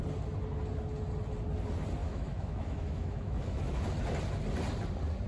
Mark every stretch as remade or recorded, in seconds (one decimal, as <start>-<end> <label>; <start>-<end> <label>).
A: 0.0-2.0 recorded; 2.0-3.9 remade; 3.9-5.3 recorded